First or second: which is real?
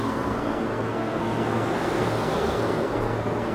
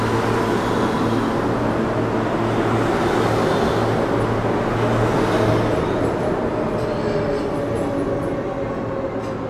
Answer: second